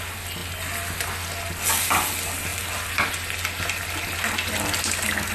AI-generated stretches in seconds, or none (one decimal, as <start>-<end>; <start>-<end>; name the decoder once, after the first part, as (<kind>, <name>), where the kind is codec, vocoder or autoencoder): none